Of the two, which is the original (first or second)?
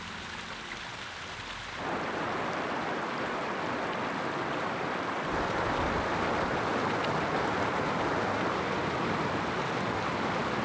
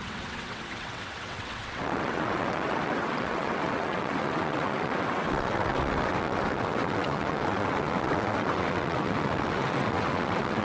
first